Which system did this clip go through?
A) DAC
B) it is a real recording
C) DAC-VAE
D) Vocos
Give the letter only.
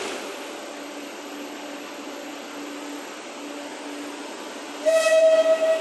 B